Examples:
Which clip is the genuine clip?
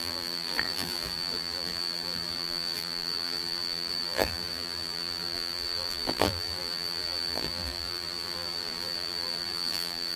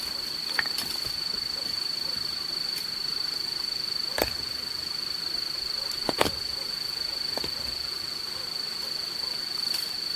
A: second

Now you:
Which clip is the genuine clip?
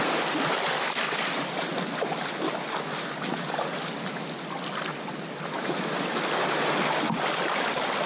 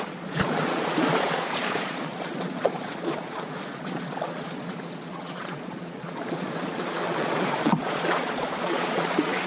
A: first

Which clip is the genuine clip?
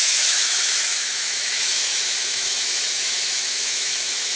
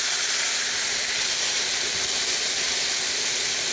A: second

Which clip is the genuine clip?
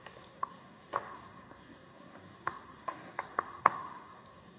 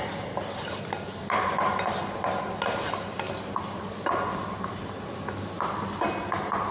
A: second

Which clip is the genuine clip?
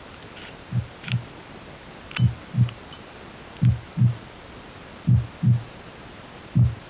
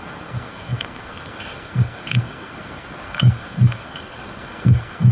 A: first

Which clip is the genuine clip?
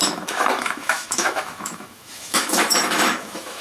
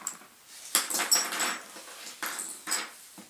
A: second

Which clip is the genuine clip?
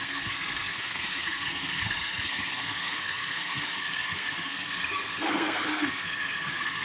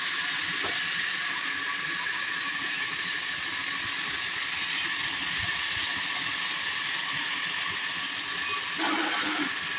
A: second